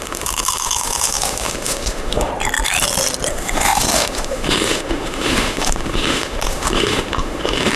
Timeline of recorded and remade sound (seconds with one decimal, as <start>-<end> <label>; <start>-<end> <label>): 0.0-2.3 remade; 2.3-3.3 recorded; 3.3-7.8 remade